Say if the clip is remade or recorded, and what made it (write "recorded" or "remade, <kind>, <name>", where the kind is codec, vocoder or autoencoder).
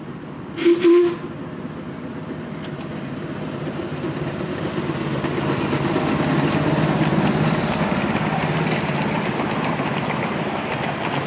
recorded